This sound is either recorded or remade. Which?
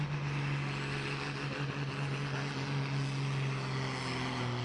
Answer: recorded